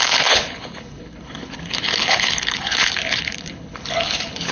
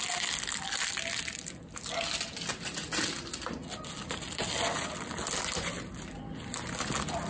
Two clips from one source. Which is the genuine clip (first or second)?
second